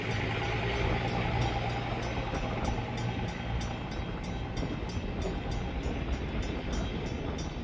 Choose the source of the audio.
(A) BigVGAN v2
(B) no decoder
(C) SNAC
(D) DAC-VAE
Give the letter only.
B